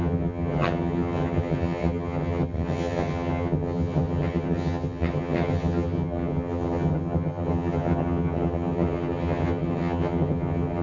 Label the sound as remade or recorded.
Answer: remade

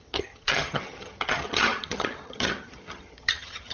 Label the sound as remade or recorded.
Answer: remade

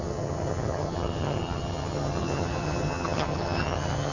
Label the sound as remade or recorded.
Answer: remade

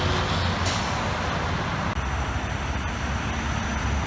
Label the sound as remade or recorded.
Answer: recorded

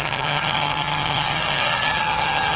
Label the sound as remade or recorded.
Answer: remade